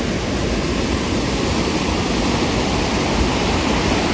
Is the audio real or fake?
real